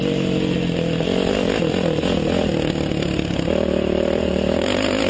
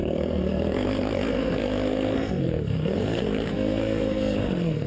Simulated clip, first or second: second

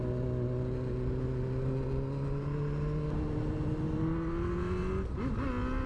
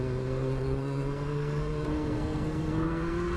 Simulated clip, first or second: second